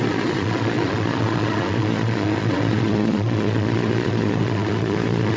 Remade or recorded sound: remade